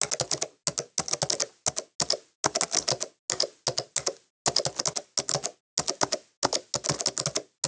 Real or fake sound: real